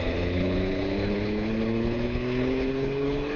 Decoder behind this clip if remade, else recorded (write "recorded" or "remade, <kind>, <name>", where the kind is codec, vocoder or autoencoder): remade, codec, HILCodec